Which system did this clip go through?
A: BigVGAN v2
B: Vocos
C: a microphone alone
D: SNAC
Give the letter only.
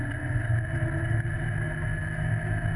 C